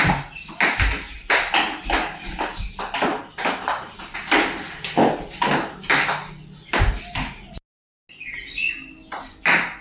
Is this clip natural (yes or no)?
yes